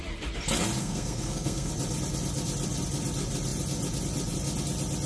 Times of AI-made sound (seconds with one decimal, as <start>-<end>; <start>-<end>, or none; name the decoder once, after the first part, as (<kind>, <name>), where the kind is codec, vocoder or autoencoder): 0.8-1.7 (codec, SNAC)